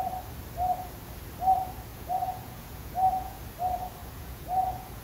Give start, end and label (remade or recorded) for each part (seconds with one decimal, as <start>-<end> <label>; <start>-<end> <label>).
0.0-1.9 recorded; 1.9-3.4 remade; 3.4-4.0 recorded; 4.0-5.0 remade